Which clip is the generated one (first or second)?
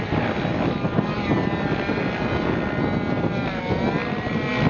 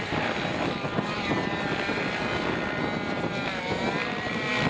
second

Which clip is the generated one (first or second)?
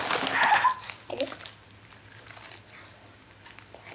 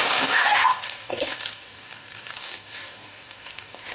second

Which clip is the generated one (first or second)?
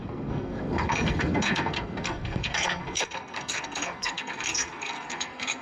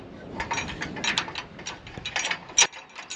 first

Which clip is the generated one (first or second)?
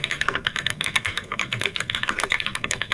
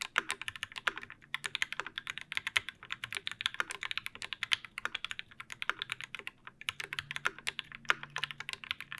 first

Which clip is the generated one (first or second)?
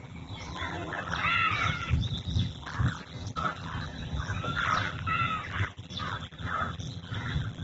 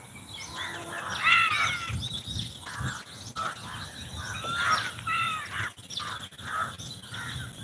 first